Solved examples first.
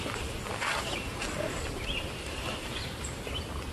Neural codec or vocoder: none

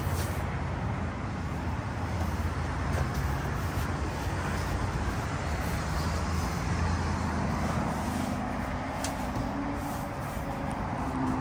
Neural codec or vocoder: none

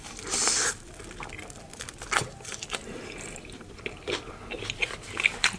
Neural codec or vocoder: vocoder, BigVGAN v2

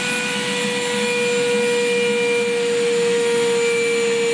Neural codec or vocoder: none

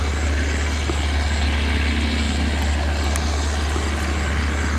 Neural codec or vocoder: none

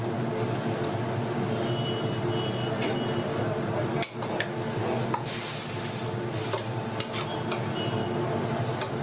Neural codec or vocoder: none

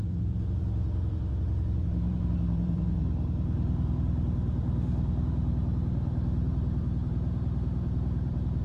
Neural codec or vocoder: vocoder, BigVGAN v2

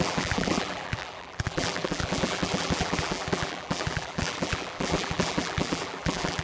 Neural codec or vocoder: vocoder, BigVGAN v2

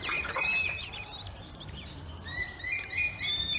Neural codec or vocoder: vocoder, BigVGAN v2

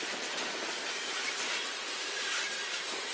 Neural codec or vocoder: vocoder, BigVGAN v2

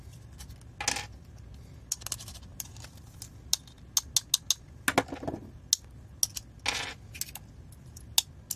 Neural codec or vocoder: none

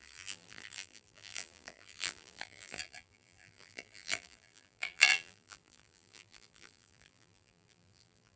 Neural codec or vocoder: vocoder, BigVGAN v2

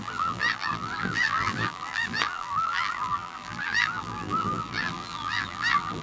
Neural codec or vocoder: vocoder, BigVGAN v2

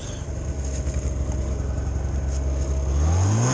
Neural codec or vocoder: none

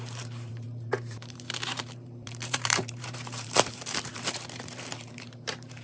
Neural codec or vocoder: vocoder, BigVGAN v2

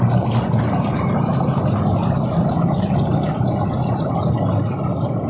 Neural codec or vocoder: none